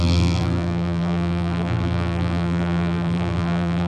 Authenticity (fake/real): fake